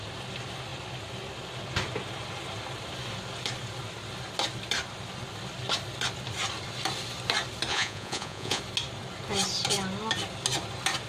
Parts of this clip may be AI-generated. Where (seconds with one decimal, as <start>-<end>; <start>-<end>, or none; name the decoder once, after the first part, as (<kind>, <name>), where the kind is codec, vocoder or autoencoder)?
7.7-8.6 (vocoder, Vocos)